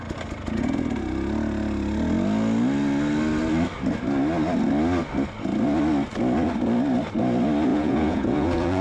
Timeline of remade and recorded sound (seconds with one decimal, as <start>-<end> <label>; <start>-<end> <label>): 0.0-7.7 recorded; 7.7-8.8 remade